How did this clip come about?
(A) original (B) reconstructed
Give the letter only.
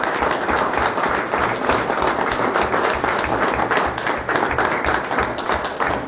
A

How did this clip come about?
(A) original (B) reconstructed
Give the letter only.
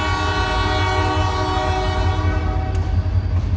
A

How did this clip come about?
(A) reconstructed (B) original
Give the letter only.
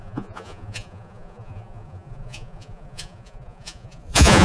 A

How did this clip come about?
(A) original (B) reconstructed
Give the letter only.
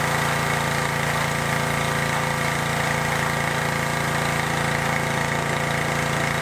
A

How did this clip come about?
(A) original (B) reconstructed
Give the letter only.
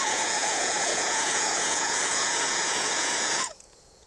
B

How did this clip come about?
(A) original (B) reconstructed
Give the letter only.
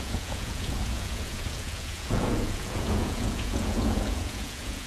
B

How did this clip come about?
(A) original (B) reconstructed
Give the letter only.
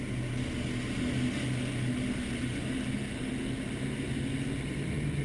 A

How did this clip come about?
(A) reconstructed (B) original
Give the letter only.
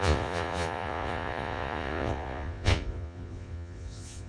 A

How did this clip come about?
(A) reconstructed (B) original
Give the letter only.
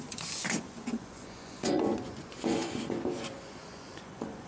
A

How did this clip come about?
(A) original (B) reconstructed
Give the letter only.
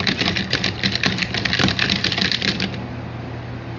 A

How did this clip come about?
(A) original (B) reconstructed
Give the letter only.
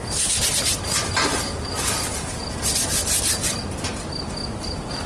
A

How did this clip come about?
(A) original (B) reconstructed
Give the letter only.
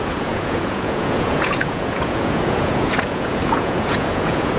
B